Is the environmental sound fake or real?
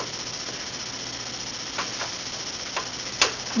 real